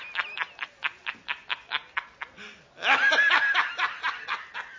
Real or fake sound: real